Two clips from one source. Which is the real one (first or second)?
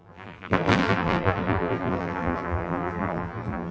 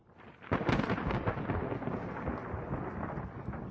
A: second